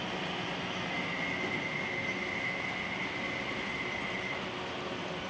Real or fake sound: real